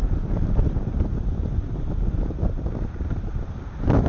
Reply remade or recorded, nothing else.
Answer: recorded